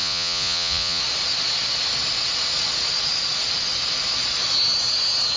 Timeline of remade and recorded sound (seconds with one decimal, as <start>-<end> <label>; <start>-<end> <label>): 0.0-1.0 remade; 1.0-5.4 recorded